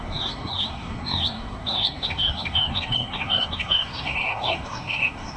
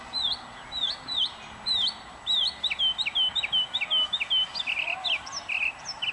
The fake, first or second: first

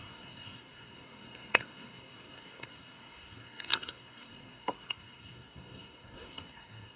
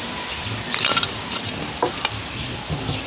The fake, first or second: first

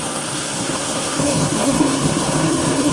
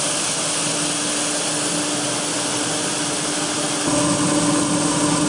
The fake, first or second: first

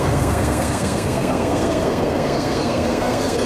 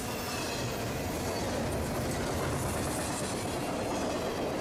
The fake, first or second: first